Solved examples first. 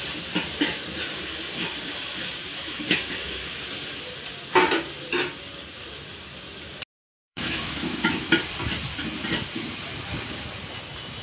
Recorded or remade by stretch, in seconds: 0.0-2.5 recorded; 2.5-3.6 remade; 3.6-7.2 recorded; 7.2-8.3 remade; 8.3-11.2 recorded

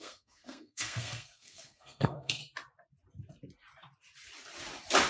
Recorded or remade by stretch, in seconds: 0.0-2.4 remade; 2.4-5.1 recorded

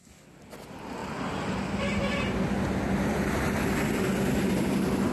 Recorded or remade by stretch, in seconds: 0.0-5.1 recorded

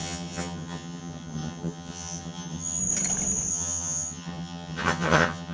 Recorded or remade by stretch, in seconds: 0.0-2.8 remade; 2.8-3.5 recorded; 3.5-5.5 remade